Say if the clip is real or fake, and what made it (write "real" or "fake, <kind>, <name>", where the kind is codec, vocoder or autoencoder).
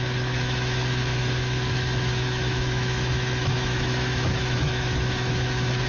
fake, autoencoder, DAC-VAE